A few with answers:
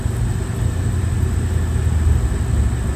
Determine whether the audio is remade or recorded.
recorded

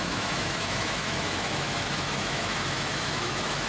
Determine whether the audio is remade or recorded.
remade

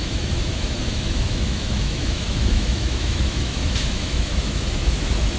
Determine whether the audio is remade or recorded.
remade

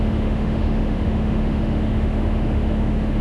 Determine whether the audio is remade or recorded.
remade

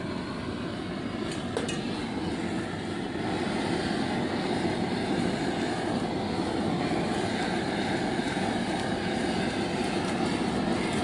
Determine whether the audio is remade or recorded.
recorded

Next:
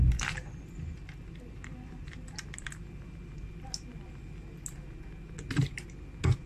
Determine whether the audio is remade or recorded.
recorded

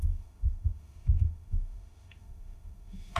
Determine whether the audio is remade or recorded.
remade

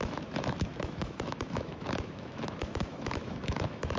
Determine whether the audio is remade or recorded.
remade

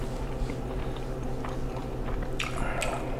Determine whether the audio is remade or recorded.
recorded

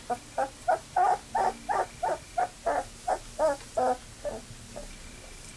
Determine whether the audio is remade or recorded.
recorded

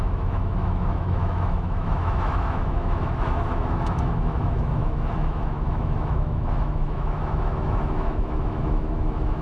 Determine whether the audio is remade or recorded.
remade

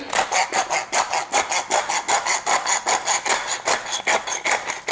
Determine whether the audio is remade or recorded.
recorded